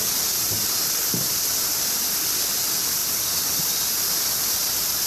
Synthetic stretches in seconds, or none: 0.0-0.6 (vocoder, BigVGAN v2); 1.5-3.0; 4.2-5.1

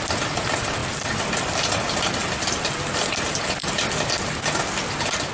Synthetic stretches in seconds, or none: 2.2-3.1 (vocoder, BigVGAN v2)

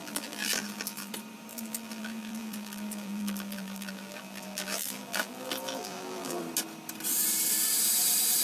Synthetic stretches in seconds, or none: 0.0-1.1 (vocoder, BigVGAN v2); 1.5-6.4

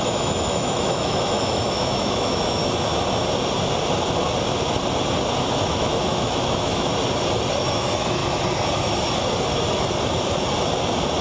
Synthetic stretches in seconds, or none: 0.0-2.6 (autoencoder, DAC-VAE); 5.7-6.9; 7.7-8.2